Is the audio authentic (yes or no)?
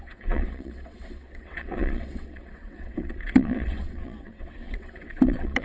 no